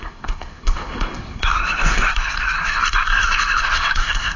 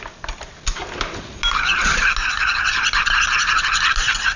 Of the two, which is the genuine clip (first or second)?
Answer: second